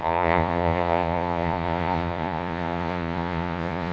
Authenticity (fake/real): fake